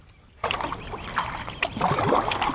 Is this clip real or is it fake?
real